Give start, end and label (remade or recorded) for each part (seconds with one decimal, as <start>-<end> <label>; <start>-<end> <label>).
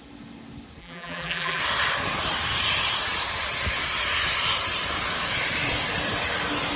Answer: 0.0-0.8 recorded; 0.8-1.6 remade; 1.6-6.8 recorded